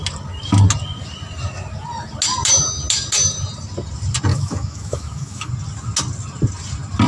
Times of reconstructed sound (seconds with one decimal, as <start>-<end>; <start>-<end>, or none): 4.3-5.5